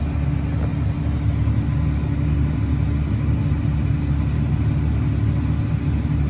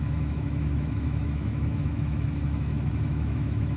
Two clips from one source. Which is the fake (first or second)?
second